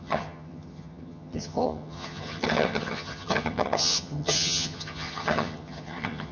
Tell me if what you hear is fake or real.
fake